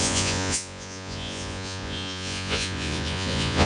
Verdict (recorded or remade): remade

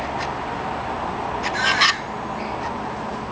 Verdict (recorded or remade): recorded